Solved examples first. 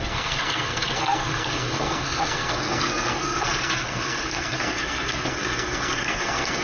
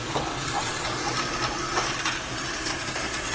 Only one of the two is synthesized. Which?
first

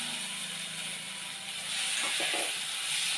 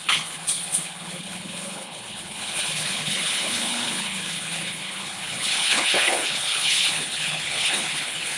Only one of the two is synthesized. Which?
second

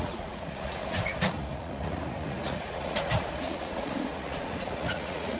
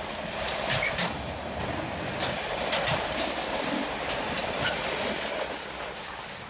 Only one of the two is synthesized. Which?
first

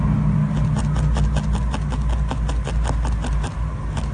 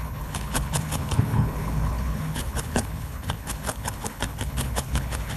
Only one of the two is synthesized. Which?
second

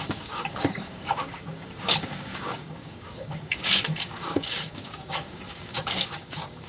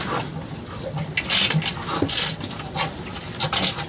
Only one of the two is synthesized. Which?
first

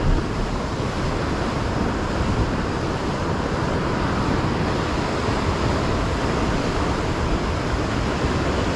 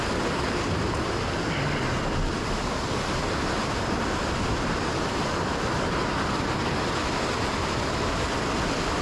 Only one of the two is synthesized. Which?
first